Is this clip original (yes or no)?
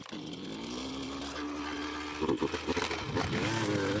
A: yes